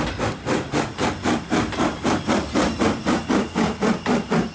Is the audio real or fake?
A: real